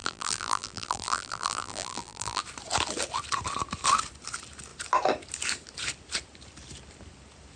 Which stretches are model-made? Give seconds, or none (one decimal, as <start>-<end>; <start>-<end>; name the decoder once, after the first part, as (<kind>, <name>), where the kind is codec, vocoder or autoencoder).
0.0-2.4 (vocoder, BigVGAN v2)